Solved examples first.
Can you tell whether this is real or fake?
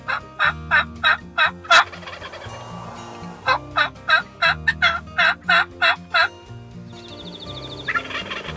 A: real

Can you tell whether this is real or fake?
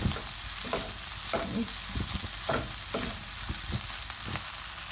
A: real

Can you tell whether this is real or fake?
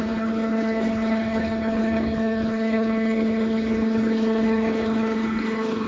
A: fake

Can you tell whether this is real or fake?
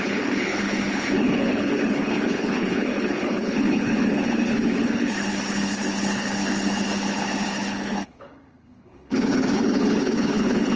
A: fake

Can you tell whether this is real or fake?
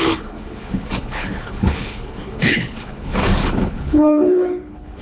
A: fake